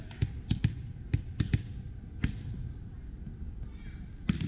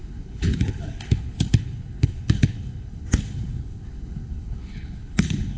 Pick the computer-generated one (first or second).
second